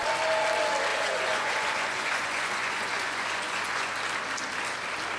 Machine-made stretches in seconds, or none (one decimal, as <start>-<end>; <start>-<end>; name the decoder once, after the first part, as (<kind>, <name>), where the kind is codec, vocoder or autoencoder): 0.9-3.9 (vocoder, Vocos)